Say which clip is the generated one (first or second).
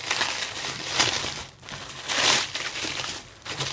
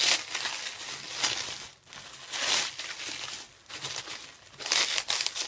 first